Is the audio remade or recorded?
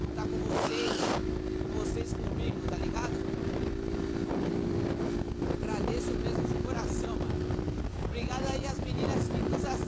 recorded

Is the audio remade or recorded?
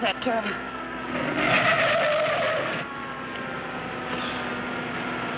recorded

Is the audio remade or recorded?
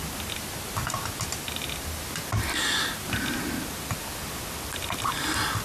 recorded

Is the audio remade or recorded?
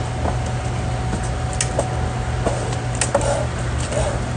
recorded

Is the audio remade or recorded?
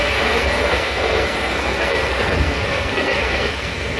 remade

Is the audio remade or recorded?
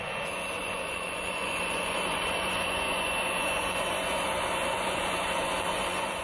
remade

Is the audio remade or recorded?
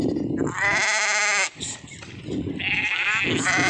recorded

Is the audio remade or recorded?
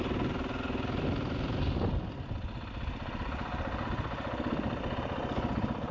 recorded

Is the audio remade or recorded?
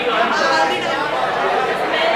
recorded